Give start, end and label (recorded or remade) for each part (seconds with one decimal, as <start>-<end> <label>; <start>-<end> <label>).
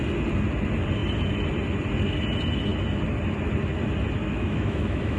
0.0-4.2 recorded; 4.2-5.2 remade